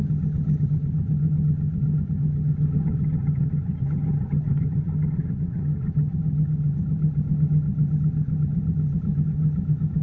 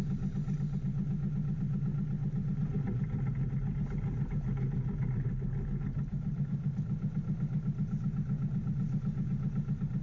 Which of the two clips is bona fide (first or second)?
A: second